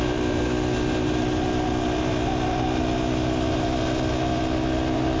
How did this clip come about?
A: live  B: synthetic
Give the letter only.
A